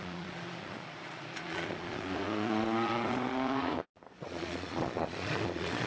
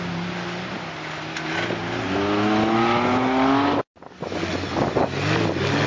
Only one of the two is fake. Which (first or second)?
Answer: first